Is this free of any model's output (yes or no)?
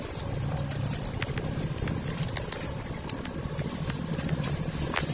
yes